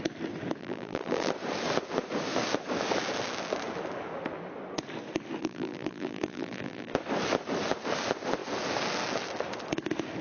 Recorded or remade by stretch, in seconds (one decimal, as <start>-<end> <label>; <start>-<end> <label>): 0.0-0.6 recorded; 0.6-1.3 remade; 1.3-5.4 recorded; 5.4-6.9 remade; 6.9-10.2 recorded